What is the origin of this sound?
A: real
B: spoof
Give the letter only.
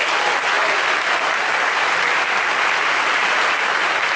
A